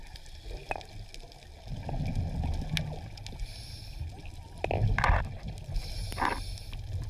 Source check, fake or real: real